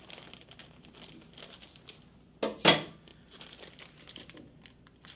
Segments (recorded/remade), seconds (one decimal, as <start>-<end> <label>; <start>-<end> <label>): 0.0-5.2 recorded